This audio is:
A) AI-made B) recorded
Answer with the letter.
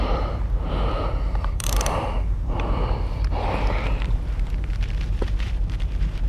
A